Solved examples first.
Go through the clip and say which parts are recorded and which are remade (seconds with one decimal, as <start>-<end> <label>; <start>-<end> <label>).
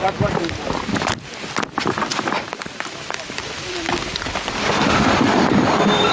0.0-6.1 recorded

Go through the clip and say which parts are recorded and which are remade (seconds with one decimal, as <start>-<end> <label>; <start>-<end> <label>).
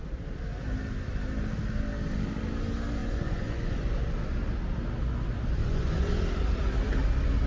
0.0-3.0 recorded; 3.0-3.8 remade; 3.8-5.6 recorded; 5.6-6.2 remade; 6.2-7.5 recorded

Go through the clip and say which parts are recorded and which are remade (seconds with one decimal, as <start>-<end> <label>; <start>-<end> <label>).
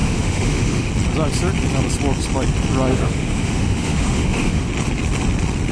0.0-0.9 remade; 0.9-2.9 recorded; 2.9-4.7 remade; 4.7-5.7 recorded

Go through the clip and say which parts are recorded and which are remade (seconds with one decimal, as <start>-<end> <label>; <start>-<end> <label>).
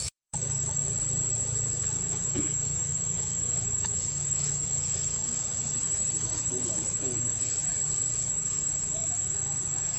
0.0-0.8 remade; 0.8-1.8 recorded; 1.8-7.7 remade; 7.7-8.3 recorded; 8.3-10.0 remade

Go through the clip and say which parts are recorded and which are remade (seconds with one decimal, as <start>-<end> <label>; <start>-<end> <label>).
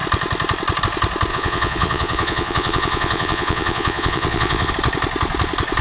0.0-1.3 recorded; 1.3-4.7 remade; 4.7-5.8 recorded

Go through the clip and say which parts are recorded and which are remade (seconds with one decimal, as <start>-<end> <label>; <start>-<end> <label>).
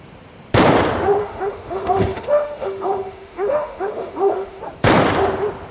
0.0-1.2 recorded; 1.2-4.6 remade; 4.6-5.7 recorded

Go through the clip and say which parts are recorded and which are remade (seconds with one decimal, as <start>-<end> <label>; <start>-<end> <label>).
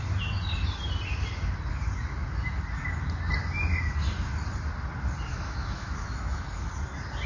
0.0-5.3 recorded; 5.3-6.7 remade; 6.7-7.3 recorded